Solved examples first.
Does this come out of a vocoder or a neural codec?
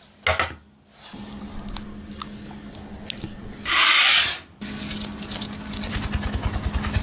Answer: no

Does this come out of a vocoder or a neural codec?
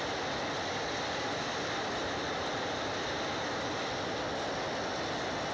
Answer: no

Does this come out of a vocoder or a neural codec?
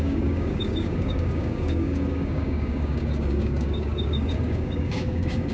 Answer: yes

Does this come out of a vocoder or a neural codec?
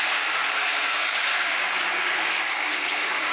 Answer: yes